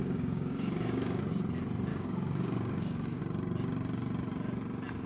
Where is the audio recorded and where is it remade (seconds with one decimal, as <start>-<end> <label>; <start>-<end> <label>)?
0.0-1.2 remade; 1.2-1.9 recorded; 1.9-3.2 remade; 3.2-5.1 recorded

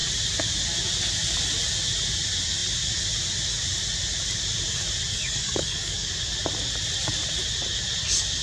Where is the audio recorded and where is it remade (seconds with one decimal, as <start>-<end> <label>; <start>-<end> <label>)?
0.0-5.1 recorded; 5.1-6.1 remade; 6.1-8.4 recorded

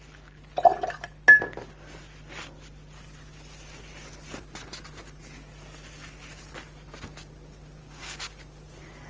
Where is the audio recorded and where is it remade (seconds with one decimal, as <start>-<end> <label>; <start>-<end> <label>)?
0.0-7.8 recorded; 7.8-8.4 remade; 8.4-9.1 recorded

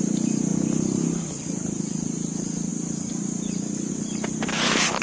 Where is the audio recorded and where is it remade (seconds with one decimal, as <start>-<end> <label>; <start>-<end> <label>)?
0.0-5.0 recorded

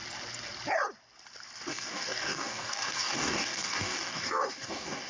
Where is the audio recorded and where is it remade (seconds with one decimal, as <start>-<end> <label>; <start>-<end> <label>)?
0.0-1.7 recorded; 1.7-5.1 remade

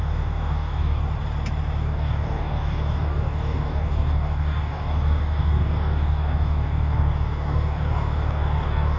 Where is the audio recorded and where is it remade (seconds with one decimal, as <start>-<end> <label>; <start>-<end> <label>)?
0.0-1.0 remade; 1.0-1.8 recorded; 1.8-9.0 remade

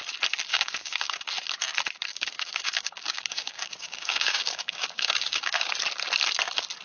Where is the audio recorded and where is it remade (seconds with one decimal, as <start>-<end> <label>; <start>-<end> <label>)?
0.0-0.5 recorded; 0.5-1.2 remade; 1.2-2.1 recorded; 2.1-5.7 remade; 5.7-6.8 recorded